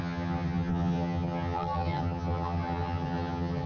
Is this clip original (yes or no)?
no